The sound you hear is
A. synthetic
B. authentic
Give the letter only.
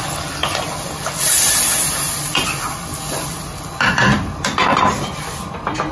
B